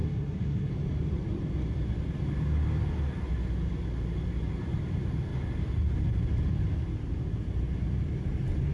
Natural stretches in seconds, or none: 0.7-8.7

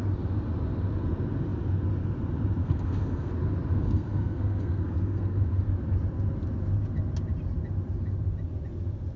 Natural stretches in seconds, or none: 0.0-2.6; 3.3-3.7; 5.6-9.2